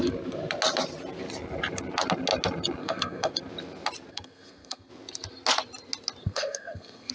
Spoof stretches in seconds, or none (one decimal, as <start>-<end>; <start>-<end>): 2.8-3.3; 4.1-4.9; 6.2-7.1